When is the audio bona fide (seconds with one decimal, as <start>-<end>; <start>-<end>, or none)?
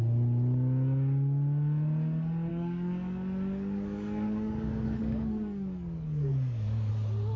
0.0-2.5; 6.9-7.4